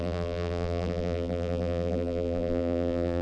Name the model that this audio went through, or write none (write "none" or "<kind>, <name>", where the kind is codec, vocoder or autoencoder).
vocoder, BigVGAN v2